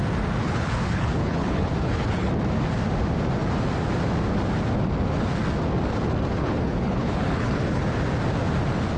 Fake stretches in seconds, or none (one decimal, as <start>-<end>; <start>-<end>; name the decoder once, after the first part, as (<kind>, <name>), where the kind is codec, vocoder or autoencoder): 0.4-2.3 (codec, HILCodec); 6.4-7.8